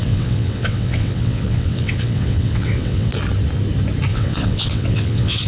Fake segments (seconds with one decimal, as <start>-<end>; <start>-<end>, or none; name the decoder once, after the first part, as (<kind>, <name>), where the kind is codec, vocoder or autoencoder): 0.0-3.1 (vocoder, WaveNeXt); 4.1-5.5